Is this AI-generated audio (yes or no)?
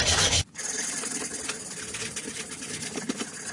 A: no